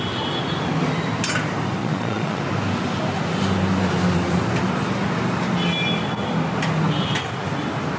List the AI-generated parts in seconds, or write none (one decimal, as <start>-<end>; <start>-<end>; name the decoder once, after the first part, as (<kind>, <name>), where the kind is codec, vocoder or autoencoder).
1.8-2.4 (vocoder, Vocos)